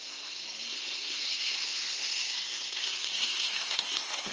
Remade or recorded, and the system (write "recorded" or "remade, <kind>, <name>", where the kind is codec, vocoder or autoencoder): remade, codec, SNAC